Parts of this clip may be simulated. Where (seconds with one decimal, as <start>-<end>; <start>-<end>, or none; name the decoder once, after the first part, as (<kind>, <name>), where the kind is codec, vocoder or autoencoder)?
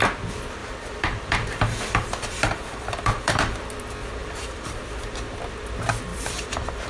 0.6-3.6 (vocoder, BigVGAN v2); 4.2-4.8; 6.1-6.9